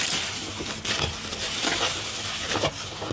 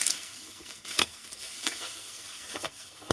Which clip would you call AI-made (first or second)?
second